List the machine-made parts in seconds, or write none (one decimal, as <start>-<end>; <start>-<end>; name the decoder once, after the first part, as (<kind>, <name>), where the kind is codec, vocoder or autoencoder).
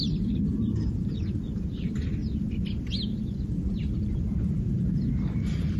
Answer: 0.0-2.2 (vocoder, BigVGAN v2); 4.0-5.8